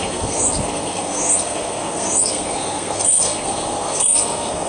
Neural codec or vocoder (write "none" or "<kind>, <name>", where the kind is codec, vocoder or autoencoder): codec, SNAC